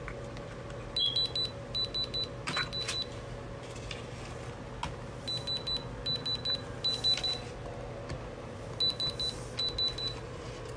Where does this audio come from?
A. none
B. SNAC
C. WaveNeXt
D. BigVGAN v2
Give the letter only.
A